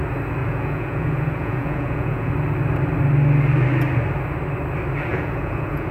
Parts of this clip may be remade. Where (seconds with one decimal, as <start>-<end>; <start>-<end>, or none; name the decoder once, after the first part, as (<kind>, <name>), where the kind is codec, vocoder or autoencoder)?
0.4-2.3 (vocoder, Vocos); 5.1-5.9